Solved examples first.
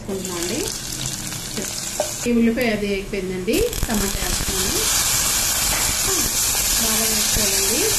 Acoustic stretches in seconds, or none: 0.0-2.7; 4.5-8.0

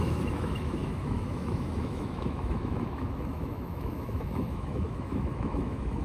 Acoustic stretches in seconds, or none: none

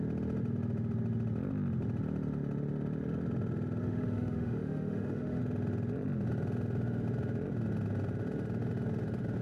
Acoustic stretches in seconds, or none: 0.0-3.8; 5.4-9.4